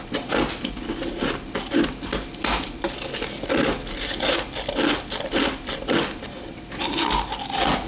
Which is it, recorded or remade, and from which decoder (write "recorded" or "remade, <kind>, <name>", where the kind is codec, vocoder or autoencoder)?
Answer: recorded